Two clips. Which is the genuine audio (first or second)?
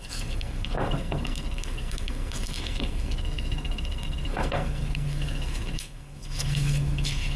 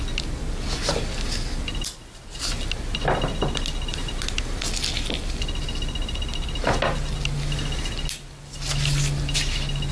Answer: second